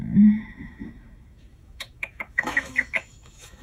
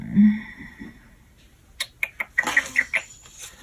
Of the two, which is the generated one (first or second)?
first